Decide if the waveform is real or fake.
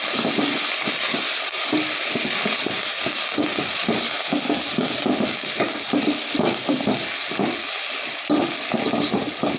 real